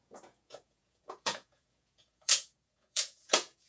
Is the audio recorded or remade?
remade